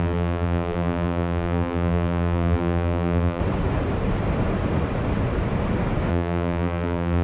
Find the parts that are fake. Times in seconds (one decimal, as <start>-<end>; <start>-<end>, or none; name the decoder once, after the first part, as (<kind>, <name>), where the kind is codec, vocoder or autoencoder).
0.0-3.4 (vocoder, BigVGAN v2); 6.1-7.2